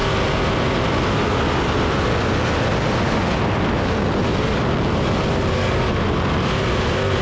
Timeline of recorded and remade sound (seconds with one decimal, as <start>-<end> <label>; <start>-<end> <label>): 0.0-7.2 recorded